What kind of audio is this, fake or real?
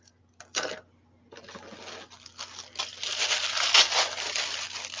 real